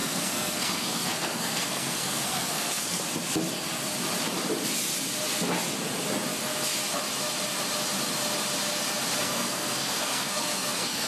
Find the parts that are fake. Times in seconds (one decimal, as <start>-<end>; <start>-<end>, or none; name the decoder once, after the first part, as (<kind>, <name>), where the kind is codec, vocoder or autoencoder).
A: 0.0-3.0 (codec, SNAC); 9.2-11.1